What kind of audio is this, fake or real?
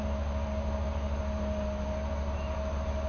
real